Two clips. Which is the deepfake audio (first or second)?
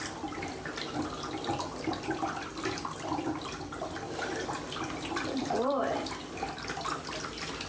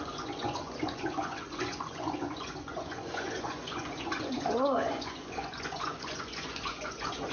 second